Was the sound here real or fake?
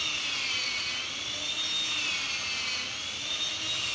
real